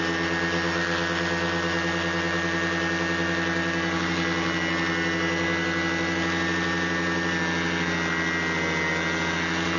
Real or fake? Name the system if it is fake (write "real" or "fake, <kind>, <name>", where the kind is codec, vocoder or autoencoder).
real